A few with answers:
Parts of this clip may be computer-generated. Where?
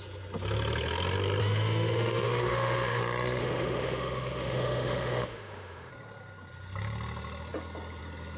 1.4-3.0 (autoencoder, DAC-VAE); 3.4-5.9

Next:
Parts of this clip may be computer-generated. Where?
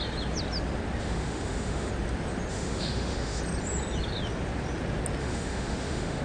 1.0-1.9 (autoencoder, DAC-VAE); 2.5-3.4; 5.2-6.2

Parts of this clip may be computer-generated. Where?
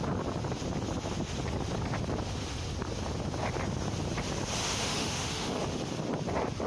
4.6-5.5 (autoencoder, DAC-VAE)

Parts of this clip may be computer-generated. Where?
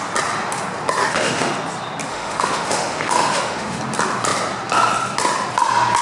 1.0-1.5 (autoencoder, DAC-VAE); 2.1-3.8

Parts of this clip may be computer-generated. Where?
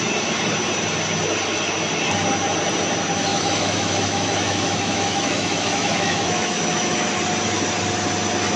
3.3-6.9 (autoencoder, DAC-VAE)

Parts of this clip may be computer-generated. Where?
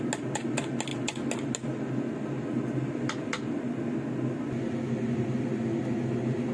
none